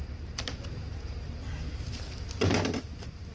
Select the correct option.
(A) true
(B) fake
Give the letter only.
A